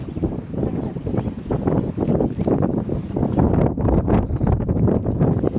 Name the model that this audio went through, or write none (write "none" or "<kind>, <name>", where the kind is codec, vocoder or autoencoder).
none